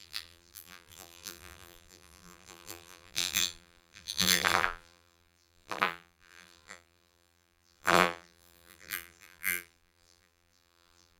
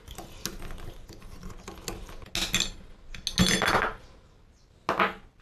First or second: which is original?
second